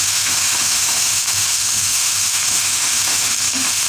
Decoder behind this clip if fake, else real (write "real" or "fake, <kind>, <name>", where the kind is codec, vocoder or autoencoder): fake, autoencoder, DAC-VAE